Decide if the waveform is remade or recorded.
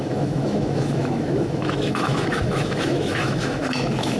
remade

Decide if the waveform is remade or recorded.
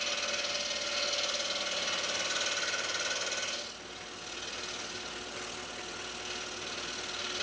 recorded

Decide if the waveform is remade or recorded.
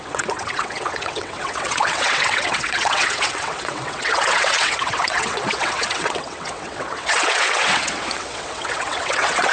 remade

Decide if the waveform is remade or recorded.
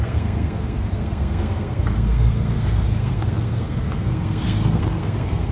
remade